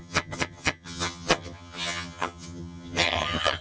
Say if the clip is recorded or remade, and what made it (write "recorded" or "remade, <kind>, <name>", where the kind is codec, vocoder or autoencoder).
remade, vocoder, HiFi-GAN